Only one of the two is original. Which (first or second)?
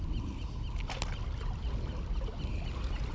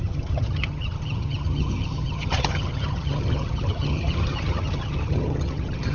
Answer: first